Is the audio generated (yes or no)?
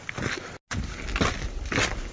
no